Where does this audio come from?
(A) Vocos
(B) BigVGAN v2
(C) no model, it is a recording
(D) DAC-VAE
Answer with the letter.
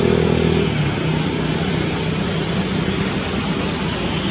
C